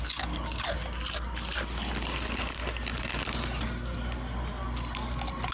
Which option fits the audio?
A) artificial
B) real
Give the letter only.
B